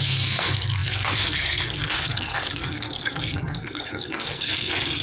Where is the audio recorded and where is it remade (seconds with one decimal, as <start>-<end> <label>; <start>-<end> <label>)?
0.0-5.0 remade

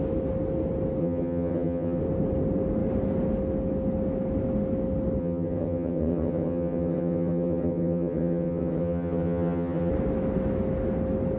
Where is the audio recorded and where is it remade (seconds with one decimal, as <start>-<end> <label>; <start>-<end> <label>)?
0.0-1.0 recorded; 1.0-2.0 remade; 2.0-5.2 recorded; 5.2-9.9 remade; 9.9-11.4 recorded

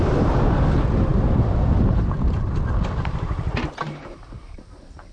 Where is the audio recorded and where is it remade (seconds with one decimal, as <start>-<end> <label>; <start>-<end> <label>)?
0.0-5.1 recorded

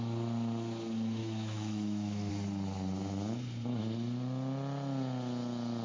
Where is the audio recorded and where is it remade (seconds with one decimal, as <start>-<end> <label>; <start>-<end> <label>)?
0.0-1.2 recorded; 1.2-2.3 remade; 2.3-5.8 recorded

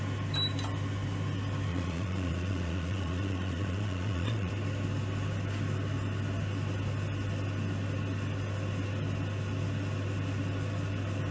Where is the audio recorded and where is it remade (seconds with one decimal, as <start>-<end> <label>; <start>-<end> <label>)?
0.0-1.7 recorded; 1.7-4.5 remade; 4.5-11.3 recorded

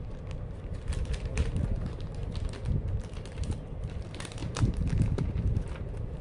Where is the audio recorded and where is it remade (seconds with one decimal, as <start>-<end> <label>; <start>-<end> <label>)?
0.0-2.2 remade; 2.2-3.3 recorded; 3.3-6.2 remade